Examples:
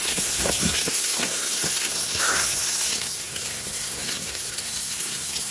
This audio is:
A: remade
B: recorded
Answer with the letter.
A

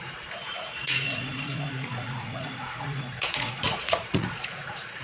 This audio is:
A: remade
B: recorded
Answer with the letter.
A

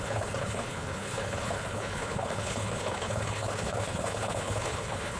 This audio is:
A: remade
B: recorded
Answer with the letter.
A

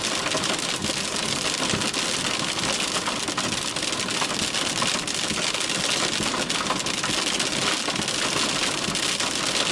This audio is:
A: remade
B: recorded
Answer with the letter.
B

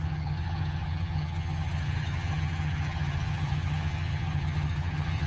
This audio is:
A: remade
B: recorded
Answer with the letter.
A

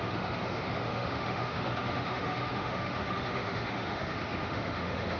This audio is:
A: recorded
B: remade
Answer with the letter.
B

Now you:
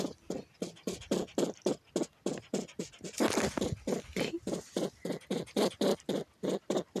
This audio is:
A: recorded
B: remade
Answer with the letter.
A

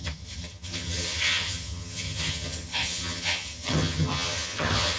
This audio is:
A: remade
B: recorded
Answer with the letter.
A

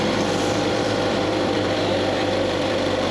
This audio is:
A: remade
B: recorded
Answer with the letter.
A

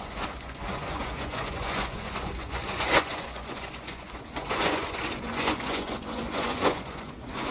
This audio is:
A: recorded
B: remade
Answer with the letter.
B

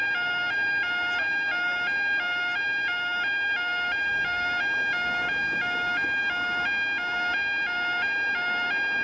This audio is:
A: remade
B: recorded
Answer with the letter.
B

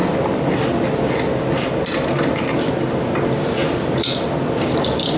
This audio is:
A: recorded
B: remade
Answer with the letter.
B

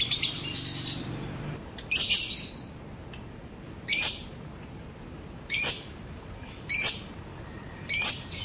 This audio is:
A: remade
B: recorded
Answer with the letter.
B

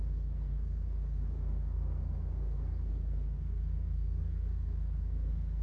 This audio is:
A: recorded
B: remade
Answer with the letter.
B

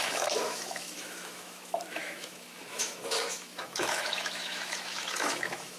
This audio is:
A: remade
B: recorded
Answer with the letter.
A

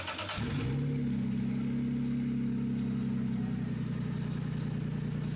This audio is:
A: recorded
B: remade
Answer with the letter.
A